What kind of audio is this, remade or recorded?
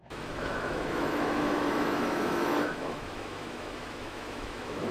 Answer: remade